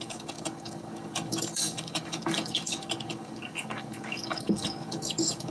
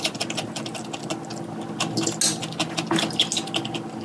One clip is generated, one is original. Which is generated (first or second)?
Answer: first